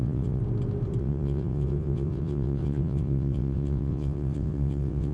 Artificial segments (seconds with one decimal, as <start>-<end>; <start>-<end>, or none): 0.0-0.4; 1.0-5.1